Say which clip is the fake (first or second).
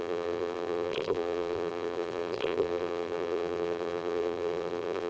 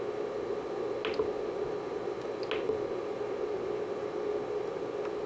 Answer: first